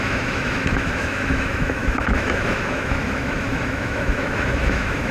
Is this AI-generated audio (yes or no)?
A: yes